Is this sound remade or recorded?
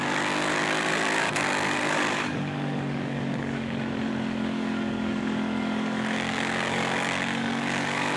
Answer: remade